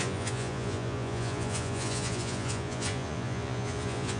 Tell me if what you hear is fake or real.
fake